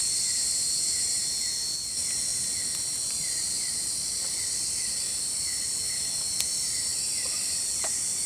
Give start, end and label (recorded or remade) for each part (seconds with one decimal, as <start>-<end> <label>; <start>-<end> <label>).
0.0-2.3 recorded; 2.3-6.2 remade; 6.2-6.9 recorded; 6.9-7.7 remade; 7.7-8.3 recorded